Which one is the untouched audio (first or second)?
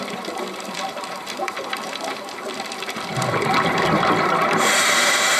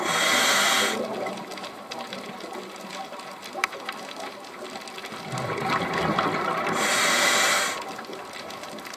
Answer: second